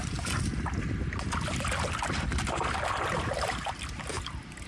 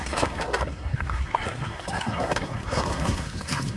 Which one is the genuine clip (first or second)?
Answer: first